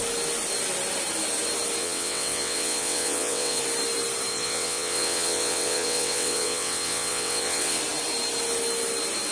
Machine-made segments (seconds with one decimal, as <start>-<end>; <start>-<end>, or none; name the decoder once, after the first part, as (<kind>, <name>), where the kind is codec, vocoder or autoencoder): 1.8-3.6 (vocoder, WaveNeXt); 4.3-7.8